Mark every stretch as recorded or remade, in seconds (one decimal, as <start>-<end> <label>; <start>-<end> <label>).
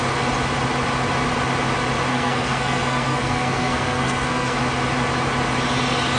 0.0-2.1 recorded; 2.1-4.6 remade; 4.6-6.2 recorded